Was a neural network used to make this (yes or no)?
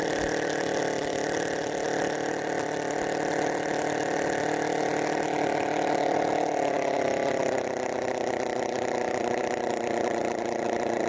no